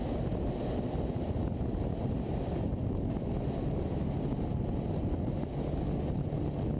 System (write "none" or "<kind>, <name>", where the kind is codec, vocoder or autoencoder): none